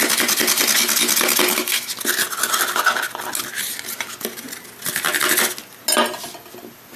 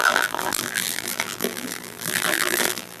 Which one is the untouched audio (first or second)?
first